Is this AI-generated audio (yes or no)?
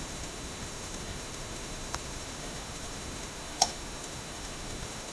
yes